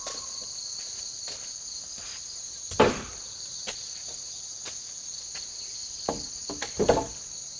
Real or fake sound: real